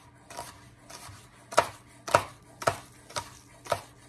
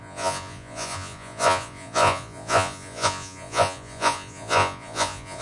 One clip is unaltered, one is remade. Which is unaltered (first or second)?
first